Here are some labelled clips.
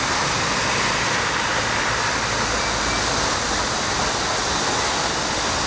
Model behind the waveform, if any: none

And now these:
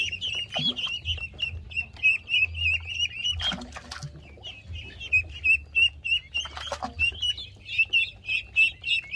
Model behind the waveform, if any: none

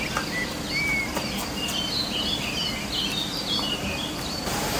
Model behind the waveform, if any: none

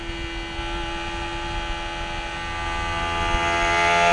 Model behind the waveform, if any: none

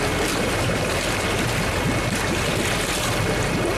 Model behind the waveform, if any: none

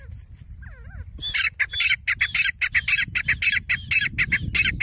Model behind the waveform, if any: none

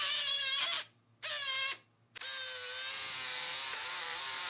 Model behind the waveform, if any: none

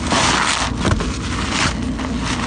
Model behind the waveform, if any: none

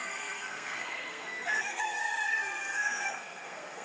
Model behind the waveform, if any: codec, SNAC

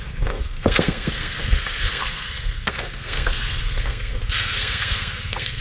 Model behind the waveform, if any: codec, SNAC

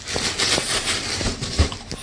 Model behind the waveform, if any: none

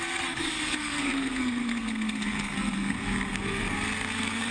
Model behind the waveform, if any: codec, SNAC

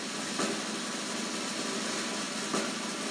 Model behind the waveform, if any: none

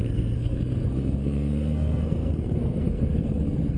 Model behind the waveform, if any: codec, SNAC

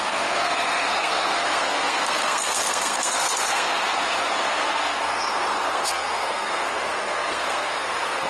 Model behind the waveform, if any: codec, SNAC